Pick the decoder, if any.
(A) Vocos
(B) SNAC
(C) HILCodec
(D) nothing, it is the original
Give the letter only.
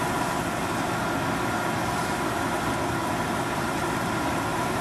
D